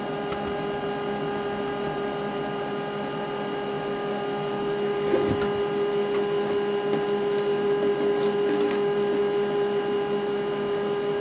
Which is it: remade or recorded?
recorded